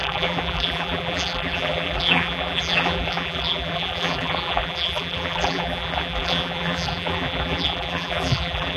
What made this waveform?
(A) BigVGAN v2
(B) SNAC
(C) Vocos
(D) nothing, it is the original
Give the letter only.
A